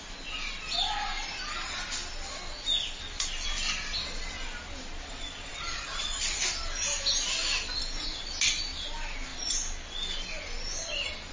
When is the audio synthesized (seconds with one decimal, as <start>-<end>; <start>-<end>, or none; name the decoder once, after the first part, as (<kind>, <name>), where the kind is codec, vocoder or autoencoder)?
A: 5.5-6.2 (vocoder, Vocos)